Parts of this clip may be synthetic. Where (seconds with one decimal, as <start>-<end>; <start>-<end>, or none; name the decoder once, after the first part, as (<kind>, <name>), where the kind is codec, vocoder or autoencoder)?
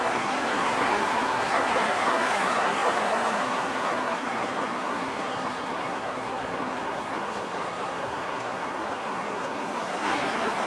0.0-10.7 (codec, SNAC)